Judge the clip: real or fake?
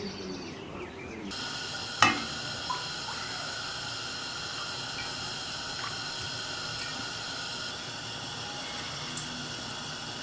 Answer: real